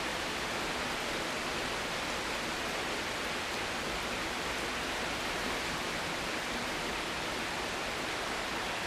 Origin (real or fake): real